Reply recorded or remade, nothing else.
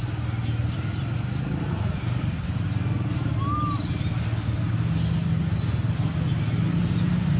recorded